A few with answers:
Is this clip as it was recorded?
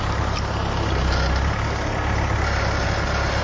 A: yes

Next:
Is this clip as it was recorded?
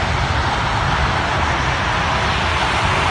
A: yes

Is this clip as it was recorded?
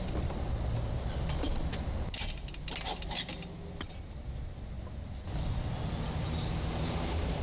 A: yes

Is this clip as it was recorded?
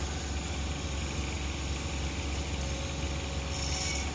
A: yes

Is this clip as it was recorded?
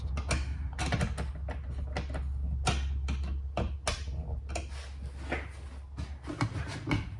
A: yes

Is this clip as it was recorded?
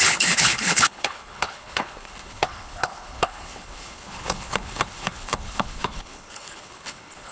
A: no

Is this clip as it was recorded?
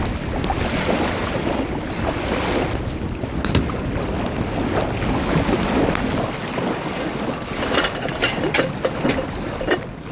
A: yes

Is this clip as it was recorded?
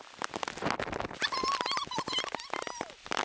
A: yes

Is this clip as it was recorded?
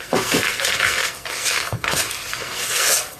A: no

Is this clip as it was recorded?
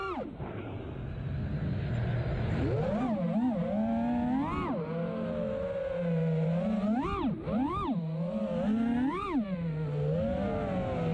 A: yes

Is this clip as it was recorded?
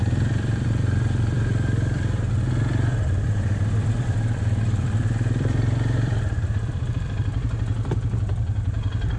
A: no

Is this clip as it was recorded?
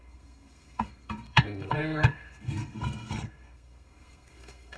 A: no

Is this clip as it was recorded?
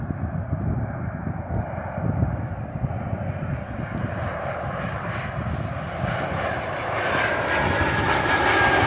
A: yes